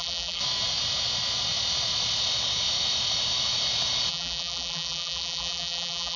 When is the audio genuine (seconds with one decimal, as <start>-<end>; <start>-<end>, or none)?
0.4-4.1